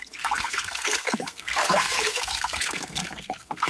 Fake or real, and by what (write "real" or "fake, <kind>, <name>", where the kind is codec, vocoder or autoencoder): fake, codec, SNAC